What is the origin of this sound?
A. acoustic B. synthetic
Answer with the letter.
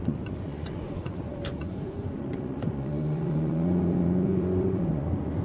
B